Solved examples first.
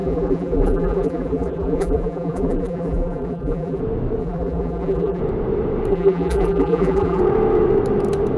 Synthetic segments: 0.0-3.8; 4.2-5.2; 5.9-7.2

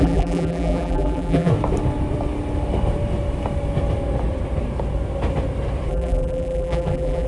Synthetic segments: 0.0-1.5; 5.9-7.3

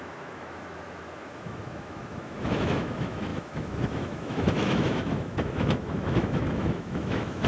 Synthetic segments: 0.0-7.5